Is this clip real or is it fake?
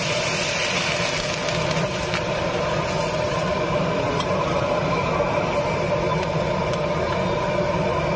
real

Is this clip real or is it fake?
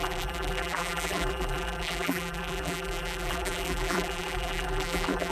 fake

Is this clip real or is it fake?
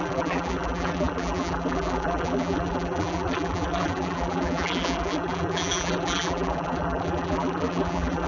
fake